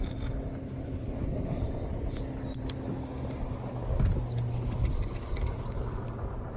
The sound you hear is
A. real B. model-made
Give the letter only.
A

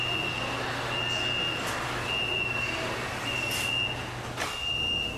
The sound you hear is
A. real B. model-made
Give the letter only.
A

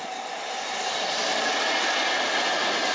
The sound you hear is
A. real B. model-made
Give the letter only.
A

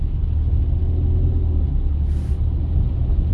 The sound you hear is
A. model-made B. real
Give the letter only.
B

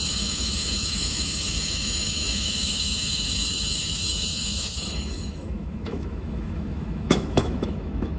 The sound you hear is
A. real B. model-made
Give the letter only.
B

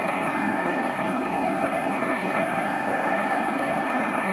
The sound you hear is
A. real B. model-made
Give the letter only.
B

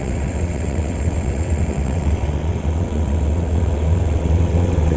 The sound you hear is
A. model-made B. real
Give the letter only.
A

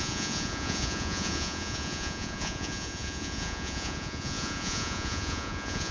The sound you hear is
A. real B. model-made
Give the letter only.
B